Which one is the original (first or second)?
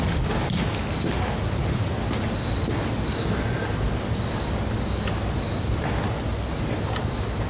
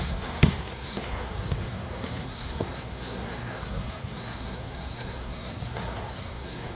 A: first